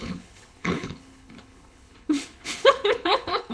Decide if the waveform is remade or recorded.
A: remade